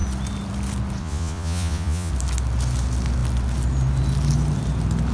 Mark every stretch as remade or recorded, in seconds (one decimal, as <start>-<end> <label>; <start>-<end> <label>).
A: 0.0-1.0 recorded; 1.0-2.1 remade; 2.1-5.1 recorded